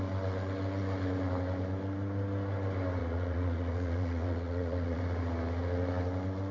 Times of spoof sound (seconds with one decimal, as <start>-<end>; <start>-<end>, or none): 3.0-5.0